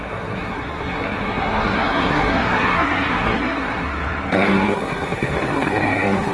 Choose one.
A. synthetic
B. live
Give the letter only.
A